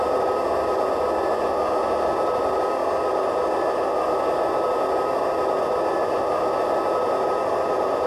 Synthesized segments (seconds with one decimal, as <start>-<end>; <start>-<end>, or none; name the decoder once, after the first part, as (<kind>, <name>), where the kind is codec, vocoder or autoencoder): none